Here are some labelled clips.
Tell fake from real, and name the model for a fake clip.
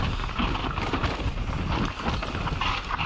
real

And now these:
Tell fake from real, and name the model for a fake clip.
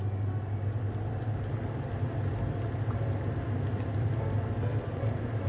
real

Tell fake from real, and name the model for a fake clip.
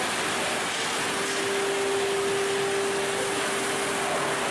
real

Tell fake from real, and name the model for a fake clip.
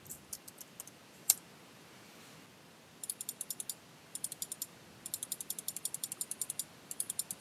real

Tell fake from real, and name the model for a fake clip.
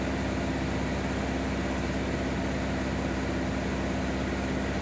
real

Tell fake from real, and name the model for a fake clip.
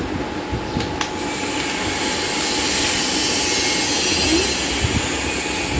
real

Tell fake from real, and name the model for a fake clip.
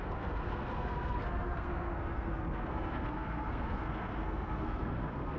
fake, codec, SNAC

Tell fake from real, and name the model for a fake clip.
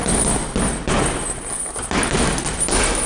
real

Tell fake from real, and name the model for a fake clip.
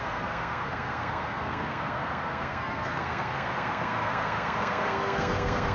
fake, codec, SNAC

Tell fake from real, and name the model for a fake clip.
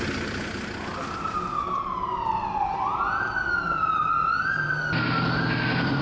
real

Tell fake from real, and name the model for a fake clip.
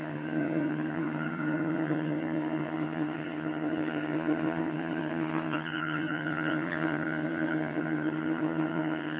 fake, vocoder, HiFi-GAN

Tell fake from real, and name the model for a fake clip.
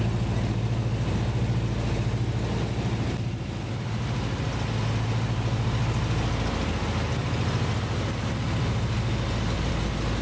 real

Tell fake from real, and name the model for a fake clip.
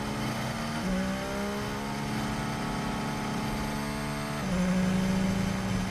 real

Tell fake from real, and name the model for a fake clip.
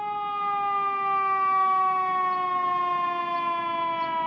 real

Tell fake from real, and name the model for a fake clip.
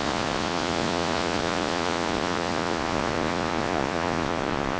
fake, vocoder, Vocos